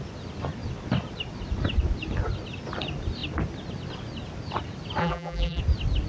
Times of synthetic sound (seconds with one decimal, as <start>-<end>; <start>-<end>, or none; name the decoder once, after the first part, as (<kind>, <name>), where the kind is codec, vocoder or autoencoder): 5.0-5.6 (vocoder, BigVGAN v2)